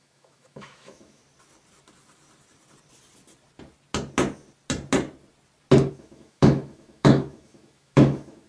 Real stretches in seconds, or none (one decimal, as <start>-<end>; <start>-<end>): 1.2-5.9